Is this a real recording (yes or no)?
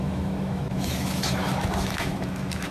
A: no